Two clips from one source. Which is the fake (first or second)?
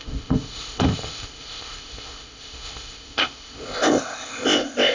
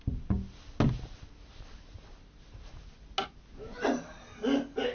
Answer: first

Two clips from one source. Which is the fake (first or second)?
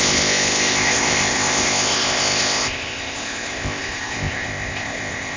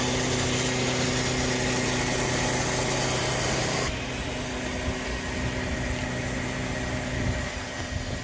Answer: first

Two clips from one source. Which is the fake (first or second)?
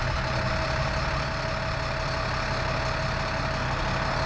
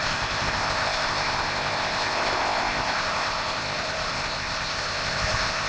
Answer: second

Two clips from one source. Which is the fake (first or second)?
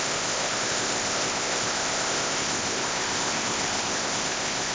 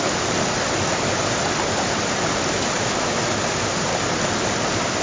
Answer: first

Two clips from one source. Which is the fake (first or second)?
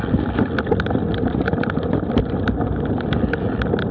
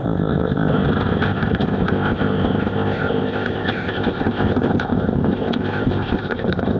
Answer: second